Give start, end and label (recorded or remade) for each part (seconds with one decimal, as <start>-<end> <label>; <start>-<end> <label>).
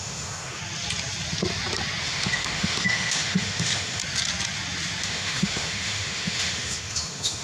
0.0-0.6 remade; 0.6-2.0 recorded; 2.0-4.0 remade; 4.0-5.0 recorded; 5.0-7.4 remade